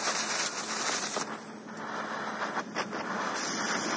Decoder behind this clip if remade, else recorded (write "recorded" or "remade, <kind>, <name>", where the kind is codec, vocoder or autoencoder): recorded